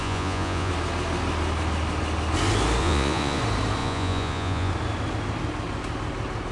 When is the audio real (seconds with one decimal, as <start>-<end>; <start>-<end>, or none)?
0.7-2.8; 3.4-3.8; 4.7-6.5